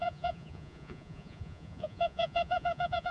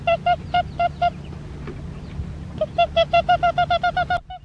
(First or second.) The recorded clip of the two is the second